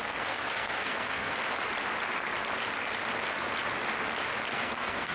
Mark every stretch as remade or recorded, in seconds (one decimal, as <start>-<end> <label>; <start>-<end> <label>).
0.0-1.4 remade; 1.4-4.5 recorded; 4.5-5.1 remade